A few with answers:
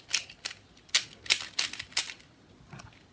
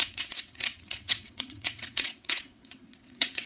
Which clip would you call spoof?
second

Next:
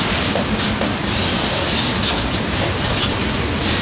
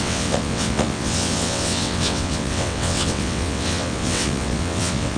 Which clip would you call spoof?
second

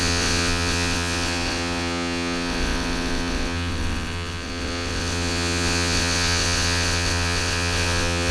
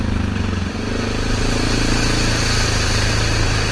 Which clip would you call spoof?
first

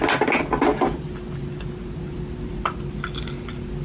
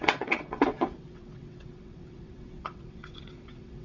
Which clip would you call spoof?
second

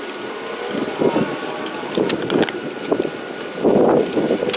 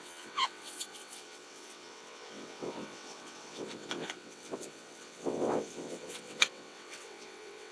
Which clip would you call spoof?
second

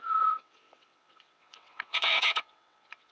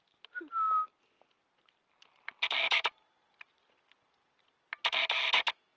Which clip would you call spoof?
first